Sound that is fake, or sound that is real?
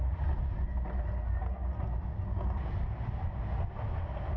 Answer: real